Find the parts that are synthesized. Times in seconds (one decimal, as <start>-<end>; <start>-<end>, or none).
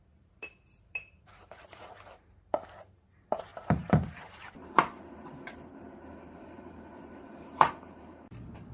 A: 0.0-8.7